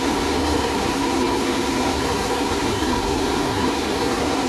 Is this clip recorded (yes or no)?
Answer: no